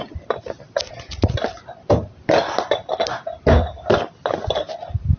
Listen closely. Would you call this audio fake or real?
real